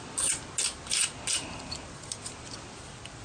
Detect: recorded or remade recorded